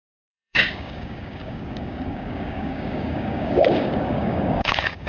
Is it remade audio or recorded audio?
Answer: remade